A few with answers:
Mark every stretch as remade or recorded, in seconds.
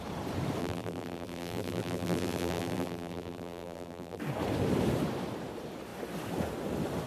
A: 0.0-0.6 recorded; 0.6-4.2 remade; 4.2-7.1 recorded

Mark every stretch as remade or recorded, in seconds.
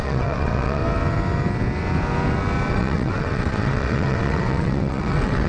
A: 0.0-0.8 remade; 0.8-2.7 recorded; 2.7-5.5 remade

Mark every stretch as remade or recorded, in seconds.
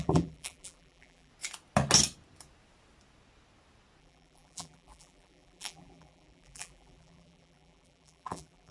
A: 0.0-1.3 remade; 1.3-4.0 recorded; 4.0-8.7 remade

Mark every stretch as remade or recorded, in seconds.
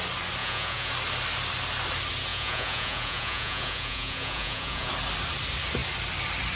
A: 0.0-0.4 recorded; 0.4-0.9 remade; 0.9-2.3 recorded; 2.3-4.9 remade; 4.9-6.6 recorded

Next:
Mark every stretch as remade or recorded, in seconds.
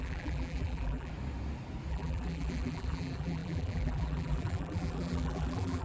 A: 0.0-1.1 remade; 1.1-1.9 recorded; 1.9-5.8 remade